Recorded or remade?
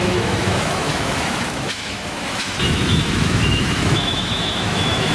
remade